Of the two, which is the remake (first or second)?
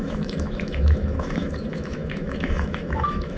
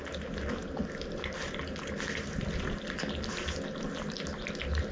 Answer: first